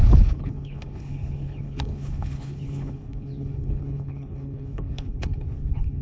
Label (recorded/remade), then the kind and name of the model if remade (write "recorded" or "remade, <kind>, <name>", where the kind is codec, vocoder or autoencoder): remade, codec, HILCodec